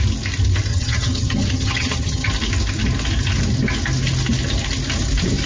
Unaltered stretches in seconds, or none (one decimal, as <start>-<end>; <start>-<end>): 0.0-0.7; 2.3-5.5